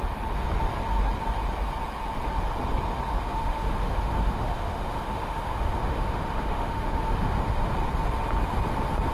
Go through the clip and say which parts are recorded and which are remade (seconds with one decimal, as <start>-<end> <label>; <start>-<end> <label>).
0.0-3.1 recorded; 3.1-7.7 remade; 7.7-9.1 recorded